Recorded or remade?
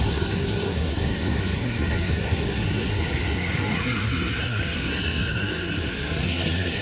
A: remade